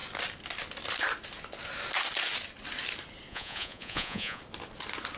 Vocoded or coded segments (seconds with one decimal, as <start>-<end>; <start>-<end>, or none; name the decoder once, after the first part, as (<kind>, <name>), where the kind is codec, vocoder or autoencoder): 3.3-4.4 (vocoder, Vocos)